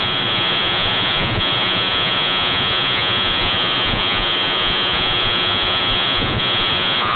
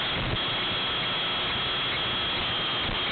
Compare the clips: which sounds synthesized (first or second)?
first